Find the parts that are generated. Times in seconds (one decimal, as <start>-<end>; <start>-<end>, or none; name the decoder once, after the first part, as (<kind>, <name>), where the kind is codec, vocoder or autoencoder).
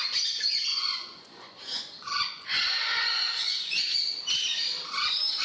0.7-3.8 (vocoder, Vocos)